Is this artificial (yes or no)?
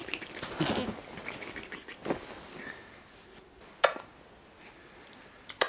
no